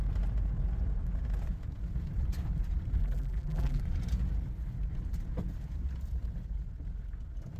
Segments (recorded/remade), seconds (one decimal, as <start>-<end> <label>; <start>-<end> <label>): 0.0-3.0 recorded; 3.0-3.8 remade; 3.8-7.6 recorded